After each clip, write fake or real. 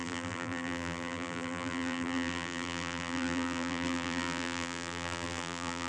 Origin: fake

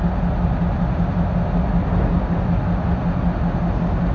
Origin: real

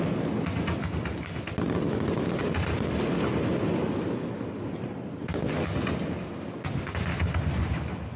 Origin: real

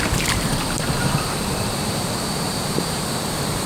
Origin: fake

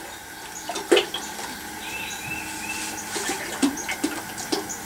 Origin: real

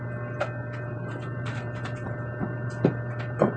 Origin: real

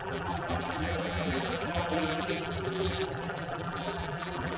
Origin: fake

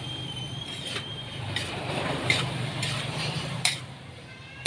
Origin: fake